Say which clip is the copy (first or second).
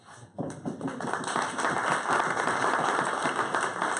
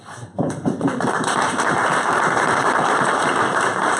second